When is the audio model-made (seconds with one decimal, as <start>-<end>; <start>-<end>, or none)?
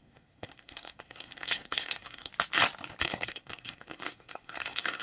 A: 0.0-2.3; 3.0-5.0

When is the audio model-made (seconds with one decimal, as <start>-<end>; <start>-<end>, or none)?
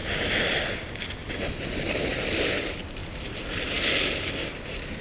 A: 0.0-0.6; 1.2-2.5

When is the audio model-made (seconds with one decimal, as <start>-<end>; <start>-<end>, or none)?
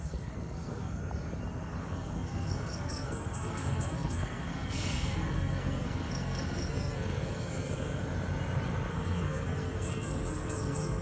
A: 0.0-1.0; 1.8-8.0; 8.9-11.0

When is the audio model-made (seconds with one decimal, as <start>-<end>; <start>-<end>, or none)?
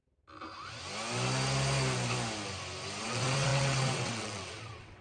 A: 3.0-5.0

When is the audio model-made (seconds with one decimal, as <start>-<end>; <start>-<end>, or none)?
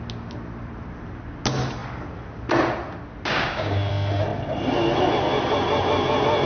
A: 3.3-3.9